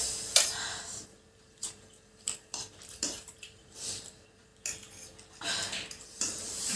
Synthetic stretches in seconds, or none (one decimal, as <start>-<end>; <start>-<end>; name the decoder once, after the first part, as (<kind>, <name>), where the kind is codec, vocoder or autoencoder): 0.0-4.5 (vocoder, BigVGAN v2); 6.0-6.8